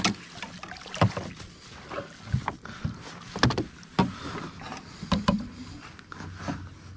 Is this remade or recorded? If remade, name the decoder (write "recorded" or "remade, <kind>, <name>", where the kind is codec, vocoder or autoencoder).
recorded